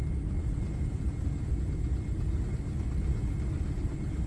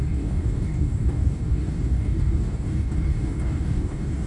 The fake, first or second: second